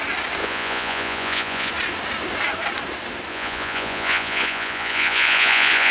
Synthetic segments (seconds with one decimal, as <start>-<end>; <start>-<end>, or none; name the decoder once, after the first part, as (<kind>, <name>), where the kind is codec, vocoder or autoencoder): 0.4-1.7 (vocoder, Vocos); 3.3-5.9